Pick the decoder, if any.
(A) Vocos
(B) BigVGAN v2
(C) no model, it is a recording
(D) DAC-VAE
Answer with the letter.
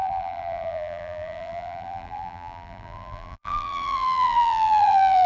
B